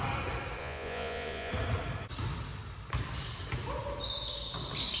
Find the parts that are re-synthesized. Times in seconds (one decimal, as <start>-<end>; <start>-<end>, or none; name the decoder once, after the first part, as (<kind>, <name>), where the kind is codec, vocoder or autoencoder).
0.6-1.5 (vocoder, Vocos)